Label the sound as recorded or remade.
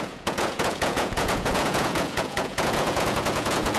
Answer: remade